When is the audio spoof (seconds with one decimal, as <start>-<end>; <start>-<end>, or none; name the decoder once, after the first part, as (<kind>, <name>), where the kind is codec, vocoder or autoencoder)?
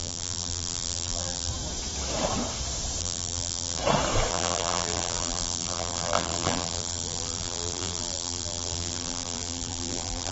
0.0-1.5 (vocoder, BigVGAN v2); 3.0-3.8; 4.3-10.3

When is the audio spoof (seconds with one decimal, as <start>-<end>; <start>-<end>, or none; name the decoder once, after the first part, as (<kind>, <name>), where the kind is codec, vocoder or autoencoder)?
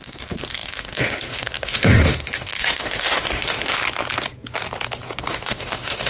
0.0-3.8 (autoencoder, DAC-VAE); 5.2-6.1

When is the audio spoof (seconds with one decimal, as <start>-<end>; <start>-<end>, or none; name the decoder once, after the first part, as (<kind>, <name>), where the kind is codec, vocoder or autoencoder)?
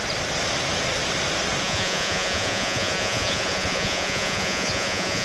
1.6-5.2 (vocoder, Vocos)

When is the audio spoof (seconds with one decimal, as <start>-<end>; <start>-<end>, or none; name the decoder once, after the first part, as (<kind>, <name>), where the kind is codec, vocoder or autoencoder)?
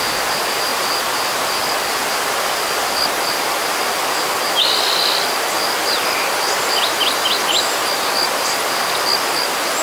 0.7-1.5 (vocoder, BigVGAN v2)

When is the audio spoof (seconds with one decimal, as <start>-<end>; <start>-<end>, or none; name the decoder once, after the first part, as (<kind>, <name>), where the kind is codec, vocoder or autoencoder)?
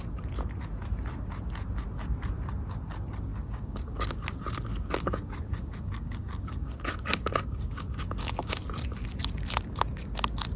3.3-4.2 (codec, DAC); 4.7-8.6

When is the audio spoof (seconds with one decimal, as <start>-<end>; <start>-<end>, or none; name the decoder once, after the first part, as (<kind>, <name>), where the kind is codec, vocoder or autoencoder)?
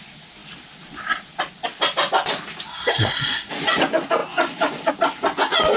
2.7-3.5 (codec, SNAC)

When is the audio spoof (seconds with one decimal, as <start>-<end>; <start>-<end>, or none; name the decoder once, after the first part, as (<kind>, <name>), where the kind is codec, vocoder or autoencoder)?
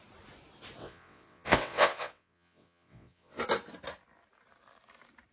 0.8-3.4 (vocoder, WaveNeXt)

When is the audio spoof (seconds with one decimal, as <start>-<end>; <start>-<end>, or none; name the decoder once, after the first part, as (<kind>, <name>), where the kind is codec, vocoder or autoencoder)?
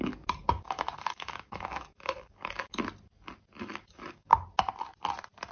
0.0-2.7 (codec, DAC); 3.6-4.3